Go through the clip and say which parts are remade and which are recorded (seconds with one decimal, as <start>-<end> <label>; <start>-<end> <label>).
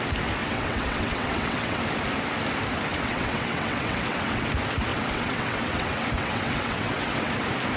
0.0-0.4 recorded; 0.4-1.8 remade; 1.8-2.9 recorded; 2.9-4.5 remade; 4.5-4.9 recorded; 4.9-7.3 remade; 7.3-7.8 recorded